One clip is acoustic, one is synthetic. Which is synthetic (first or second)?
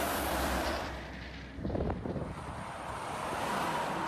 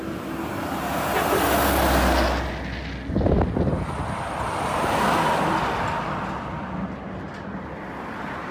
first